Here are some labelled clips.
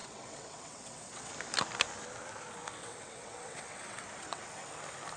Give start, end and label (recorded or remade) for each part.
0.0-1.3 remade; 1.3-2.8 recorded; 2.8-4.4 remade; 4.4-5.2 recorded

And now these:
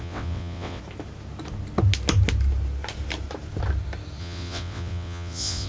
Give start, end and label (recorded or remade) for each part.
0.0-0.8 remade; 0.8-4.2 recorded; 4.2-5.7 remade

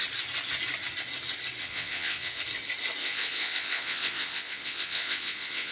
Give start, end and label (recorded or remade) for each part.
0.0-1.6 recorded; 1.6-2.4 remade; 2.4-3.0 recorded; 3.0-5.7 remade

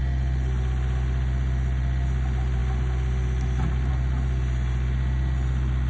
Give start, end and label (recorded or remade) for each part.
0.0-5.9 recorded